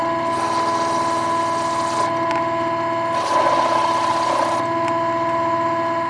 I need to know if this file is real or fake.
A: real